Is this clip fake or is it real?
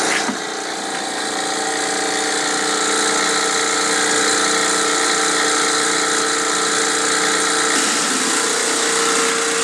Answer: real